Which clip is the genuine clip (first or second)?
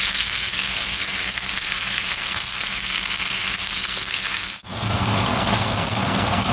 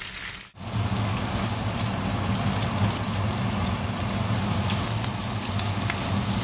second